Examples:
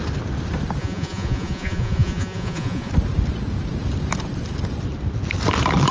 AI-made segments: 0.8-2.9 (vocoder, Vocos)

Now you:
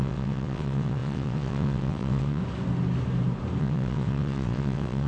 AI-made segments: 0.0-2.4 (vocoder, WaveNeXt); 3.6-5.1

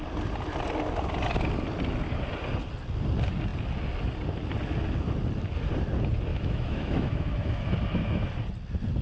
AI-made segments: 6.3-7.7 (autoencoder, DAC-VAE)

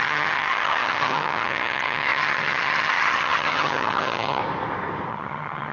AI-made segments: 0.0-4.4 (vocoder, HiFi-GAN); 5.1-5.7

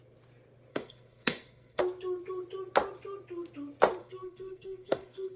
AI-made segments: 0.7-1.8 (codec, SNAC); 4.0-5.4